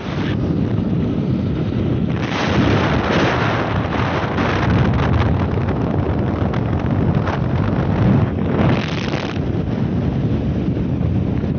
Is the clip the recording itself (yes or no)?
yes